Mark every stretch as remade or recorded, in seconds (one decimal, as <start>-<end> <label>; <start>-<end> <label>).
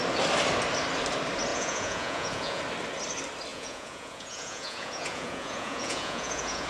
0.0-1.5 recorded; 1.5-2.6 remade; 2.6-3.5 recorded; 3.5-6.7 remade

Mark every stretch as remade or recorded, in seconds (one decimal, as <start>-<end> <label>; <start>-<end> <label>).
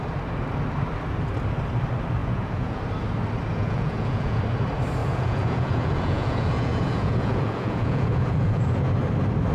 0.0-2.2 recorded; 2.2-2.8 remade; 2.8-3.5 recorded; 3.5-4.4 remade; 4.4-5.0 recorded; 5.0-8.9 remade; 8.9-9.5 recorded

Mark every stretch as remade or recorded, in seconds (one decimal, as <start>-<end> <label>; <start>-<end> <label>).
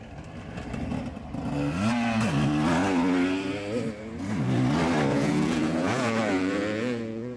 0.0-5.1 recorded; 5.1-7.4 remade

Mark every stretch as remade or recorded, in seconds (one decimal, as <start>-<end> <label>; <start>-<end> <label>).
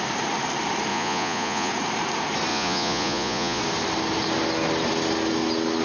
0.0-0.9 recorded; 0.9-1.7 remade; 1.7-2.5 recorded; 2.5-3.6 remade; 3.6-5.8 recorded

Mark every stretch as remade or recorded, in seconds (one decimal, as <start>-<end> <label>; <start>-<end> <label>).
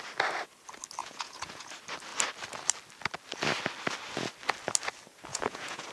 0.0-1.0 recorded; 1.0-1.7 remade; 1.7-5.3 recorded; 5.3-5.9 remade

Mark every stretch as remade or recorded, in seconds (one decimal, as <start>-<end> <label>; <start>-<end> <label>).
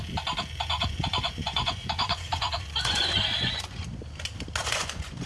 0.0-0.7 recorded; 0.7-3.9 remade; 3.9-4.6 recorded; 4.6-5.3 remade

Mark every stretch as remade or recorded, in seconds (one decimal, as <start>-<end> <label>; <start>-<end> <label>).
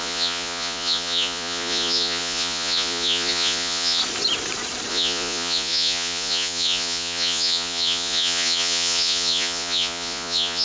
0.0-4.0 remade; 4.0-4.9 recorded; 4.9-10.6 remade